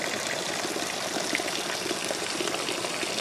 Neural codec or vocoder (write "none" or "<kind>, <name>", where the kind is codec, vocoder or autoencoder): none